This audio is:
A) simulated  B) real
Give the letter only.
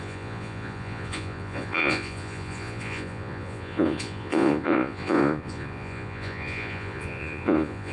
A